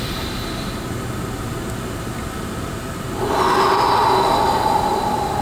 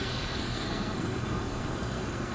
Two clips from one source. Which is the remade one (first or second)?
second